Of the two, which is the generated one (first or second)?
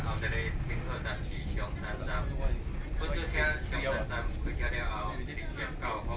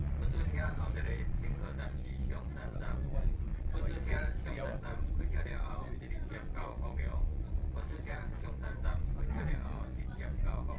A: second